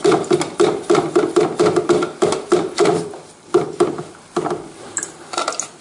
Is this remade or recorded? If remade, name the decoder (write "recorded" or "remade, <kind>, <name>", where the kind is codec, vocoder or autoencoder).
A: recorded